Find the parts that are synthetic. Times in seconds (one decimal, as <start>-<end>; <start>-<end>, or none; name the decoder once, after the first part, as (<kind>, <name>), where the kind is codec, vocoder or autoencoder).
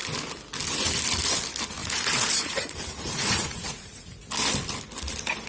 1.8-4.2 (vocoder, Vocos)